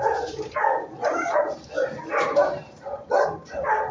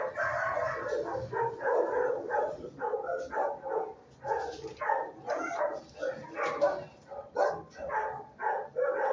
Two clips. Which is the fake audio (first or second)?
first